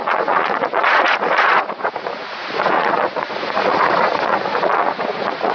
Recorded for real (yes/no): no